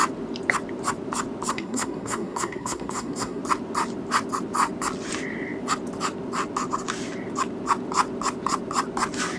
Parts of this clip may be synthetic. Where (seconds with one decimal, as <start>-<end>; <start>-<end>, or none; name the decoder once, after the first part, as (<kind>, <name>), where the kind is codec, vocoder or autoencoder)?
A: 1.5-3.4 (codec, SNAC)